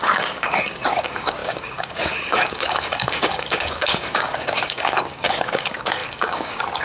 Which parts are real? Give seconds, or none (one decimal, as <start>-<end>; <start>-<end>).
none